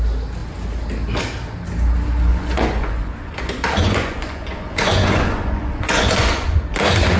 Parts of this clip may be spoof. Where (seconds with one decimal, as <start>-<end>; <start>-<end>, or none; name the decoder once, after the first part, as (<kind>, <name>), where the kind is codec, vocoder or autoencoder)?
2.3-6.6 (vocoder, Vocos)